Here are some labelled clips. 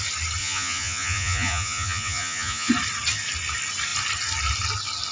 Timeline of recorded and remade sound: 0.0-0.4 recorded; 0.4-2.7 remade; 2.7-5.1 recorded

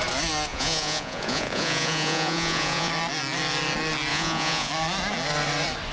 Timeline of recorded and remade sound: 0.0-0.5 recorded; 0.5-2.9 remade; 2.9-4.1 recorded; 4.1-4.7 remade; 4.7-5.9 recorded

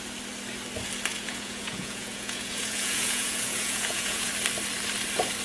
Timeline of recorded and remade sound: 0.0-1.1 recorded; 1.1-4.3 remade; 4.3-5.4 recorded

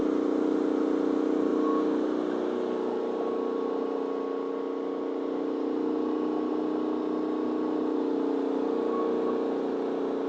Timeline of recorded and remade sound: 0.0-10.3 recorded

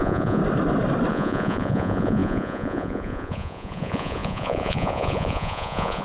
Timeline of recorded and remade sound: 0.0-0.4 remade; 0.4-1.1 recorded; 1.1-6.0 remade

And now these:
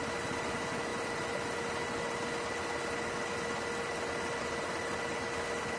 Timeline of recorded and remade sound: 0.0-5.8 recorded